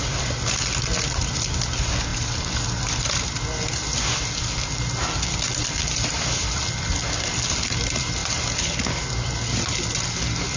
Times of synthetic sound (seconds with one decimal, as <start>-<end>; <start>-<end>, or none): 2.1-3.1; 5.8-6.6; 8.2-8.7